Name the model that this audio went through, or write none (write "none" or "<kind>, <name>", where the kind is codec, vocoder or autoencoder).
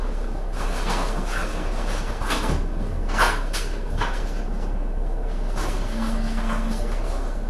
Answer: codec, SNAC